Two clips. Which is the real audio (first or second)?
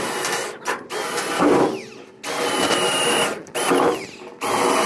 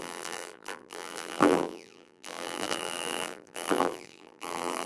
first